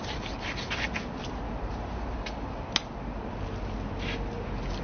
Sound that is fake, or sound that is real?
real